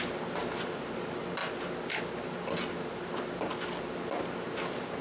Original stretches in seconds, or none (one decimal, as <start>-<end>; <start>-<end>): 0.0-5.0